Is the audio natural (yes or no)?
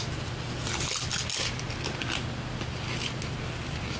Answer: yes